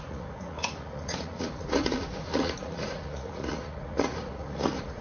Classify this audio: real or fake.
fake